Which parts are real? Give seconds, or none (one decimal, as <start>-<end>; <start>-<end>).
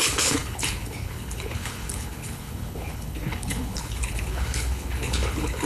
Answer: none